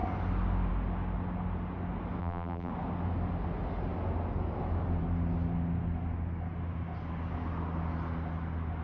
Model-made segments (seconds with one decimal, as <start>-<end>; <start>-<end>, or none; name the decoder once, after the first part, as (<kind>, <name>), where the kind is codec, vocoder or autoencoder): 2.2-2.7 (vocoder, BigVGAN v2)